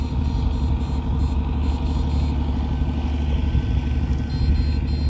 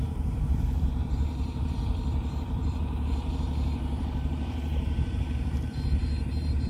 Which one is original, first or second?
first